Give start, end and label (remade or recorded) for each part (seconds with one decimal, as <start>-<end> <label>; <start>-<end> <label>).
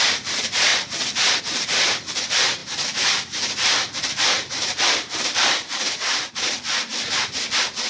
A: 0.0-6.9 remade; 6.9-7.9 recorded